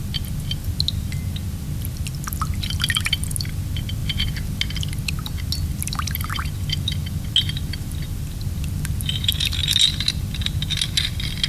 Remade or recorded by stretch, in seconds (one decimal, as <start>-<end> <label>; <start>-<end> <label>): 0.0-11.5 recorded